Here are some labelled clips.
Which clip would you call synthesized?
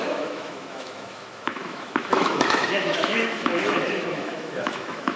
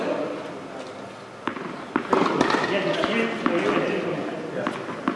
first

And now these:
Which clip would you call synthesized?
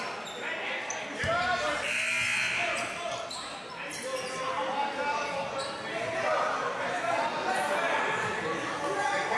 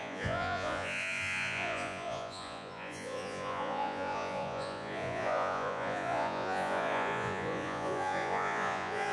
second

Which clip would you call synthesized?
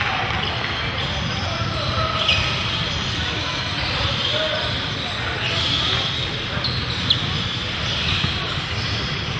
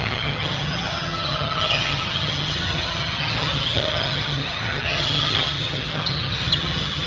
second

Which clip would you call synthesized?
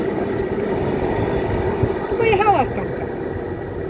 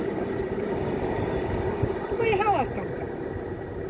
second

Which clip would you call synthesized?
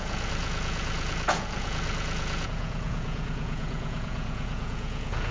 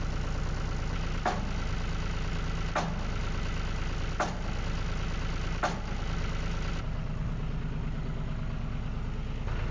first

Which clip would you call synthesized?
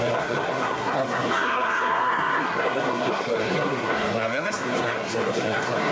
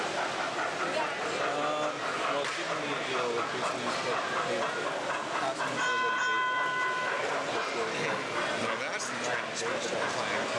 first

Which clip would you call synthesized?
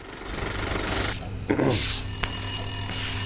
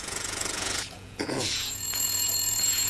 second